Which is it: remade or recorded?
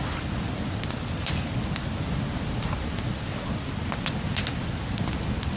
recorded